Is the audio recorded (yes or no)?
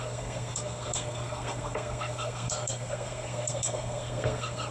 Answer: no